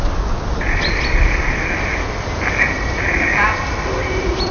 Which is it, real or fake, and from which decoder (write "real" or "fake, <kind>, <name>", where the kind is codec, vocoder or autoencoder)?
real